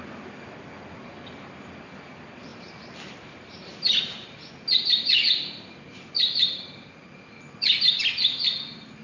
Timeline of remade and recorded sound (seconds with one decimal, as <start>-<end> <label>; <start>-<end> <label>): 0.0-2.5 recorded; 2.5-4.5 remade; 4.5-9.0 recorded